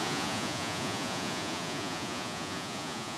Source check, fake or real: fake